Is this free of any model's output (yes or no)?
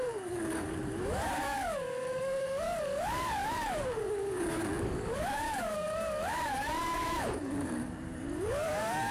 no